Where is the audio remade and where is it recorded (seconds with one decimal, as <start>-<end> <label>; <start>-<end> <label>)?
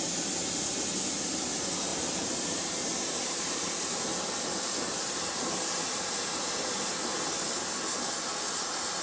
0.0-1.9 recorded; 1.9-7.1 remade; 7.1-9.0 recorded